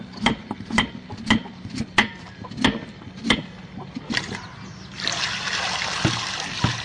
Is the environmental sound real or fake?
real